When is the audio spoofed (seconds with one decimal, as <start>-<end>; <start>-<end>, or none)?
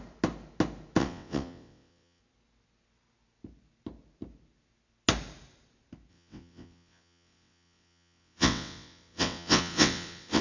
1.0-2.2; 6.1-10.4